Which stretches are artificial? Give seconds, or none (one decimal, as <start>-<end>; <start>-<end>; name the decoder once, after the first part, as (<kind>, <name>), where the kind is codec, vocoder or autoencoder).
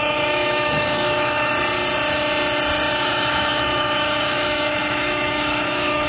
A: 0.0-1.5 (autoencoder, DAC-VAE); 2.9-6.1